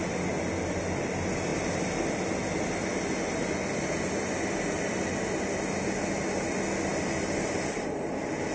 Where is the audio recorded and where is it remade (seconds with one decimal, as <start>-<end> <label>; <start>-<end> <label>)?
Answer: 0.0-8.5 recorded